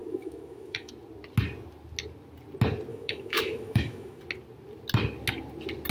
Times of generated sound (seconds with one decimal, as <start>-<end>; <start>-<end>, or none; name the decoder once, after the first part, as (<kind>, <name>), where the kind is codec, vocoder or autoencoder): 0.0-0.9 (autoencoder, DAC-VAE); 2.9-4.2